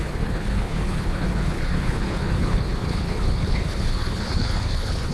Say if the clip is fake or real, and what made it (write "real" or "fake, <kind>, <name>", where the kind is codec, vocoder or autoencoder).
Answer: fake, codec, HILCodec